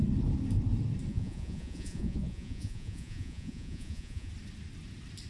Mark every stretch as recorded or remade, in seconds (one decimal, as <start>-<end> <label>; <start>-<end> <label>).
0.0-1.1 recorded; 1.1-4.3 remade; 4.3-5.3 recorded